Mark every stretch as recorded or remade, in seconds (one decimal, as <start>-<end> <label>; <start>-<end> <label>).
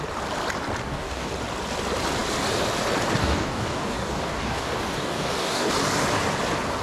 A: 0.0-0.8 recorded; 0.8-1.3 remade; 1.3-3.2 recorded; 3.2-5.7 remade; 5.7-6.8 recorded